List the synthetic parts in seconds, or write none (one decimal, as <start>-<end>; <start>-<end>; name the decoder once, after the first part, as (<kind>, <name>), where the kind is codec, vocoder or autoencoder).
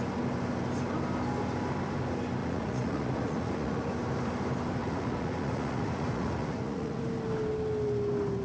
2.4-3.9 (vocoder, Vocos); 4.8-7.0